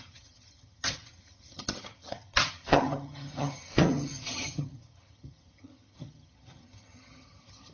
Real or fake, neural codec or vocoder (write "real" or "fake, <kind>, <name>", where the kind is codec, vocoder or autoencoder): fake, vocoder, HiFi-GAN